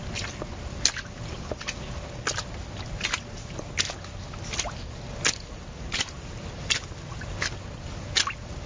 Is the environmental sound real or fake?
real